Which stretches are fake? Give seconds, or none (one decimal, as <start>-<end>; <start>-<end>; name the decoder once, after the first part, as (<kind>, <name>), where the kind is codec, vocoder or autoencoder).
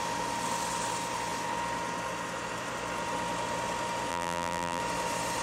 4.1-4.8 (vocoder, BigVGAN v2)